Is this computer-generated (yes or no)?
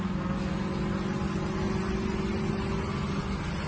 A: no